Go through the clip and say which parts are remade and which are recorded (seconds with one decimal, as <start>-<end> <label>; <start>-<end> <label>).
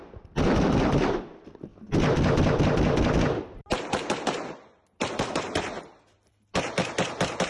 0.0-7.5 recorded